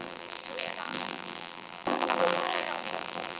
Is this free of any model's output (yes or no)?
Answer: no